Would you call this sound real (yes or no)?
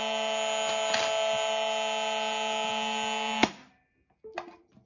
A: yes